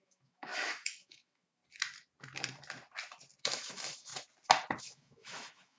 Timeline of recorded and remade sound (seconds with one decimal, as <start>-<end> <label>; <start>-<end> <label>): 0.0-1.6 remade; 1.6-3.4 recorded; 3.4-4.1 remade; 4.1-4.8 recorded; 4.8-5.8 remade